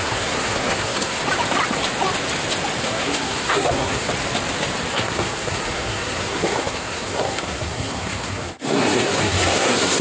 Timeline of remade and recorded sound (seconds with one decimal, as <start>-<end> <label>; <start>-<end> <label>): 0.0-1.2 remade; 1.2-2.8 recorded; 2.8-4.1 remade; 4.1-4.9 recorded; 4.9-10.0 remade